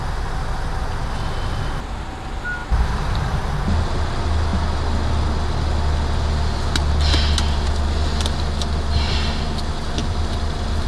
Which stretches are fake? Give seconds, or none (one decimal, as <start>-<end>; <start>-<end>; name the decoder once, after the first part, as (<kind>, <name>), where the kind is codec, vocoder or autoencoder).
2.6-3.4 (vocoder, BigVGAN v2); 10.0-10.9